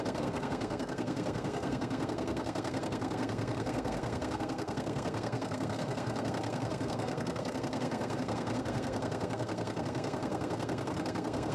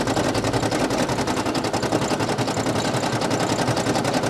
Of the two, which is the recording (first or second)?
second